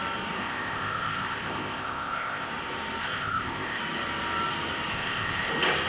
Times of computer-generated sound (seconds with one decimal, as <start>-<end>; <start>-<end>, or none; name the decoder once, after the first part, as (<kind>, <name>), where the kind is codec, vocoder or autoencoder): 0.4-2.5 (codec, ZipCodec); 3.0-3.8; 4.9-5.5